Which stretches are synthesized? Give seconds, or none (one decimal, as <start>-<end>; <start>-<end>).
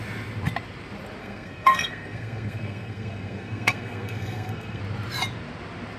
1.2-4.8